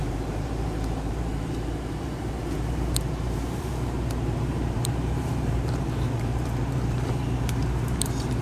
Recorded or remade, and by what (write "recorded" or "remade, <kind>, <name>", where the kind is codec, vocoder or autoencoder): remade, vocoder, BigVGAN v2